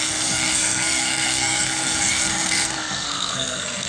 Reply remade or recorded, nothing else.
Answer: remade